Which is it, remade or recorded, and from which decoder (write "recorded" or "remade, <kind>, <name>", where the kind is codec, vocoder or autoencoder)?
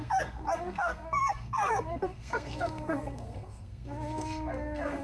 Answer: remade, codec, SNAC